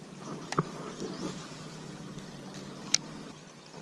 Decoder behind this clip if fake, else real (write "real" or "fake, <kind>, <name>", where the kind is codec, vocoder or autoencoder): real